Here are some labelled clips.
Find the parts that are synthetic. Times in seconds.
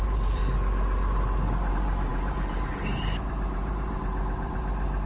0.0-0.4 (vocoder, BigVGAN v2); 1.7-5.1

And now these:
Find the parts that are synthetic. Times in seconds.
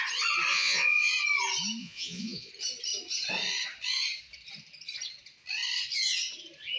0.5-1.1 (vocoder, Vocos); 1.8-2.5